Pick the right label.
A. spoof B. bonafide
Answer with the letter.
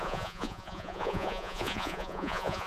A